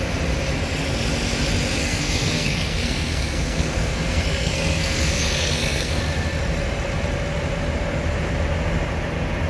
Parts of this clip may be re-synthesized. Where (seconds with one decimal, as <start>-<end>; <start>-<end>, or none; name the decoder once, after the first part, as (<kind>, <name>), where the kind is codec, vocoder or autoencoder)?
1.8-6.0 (codec, SNAC)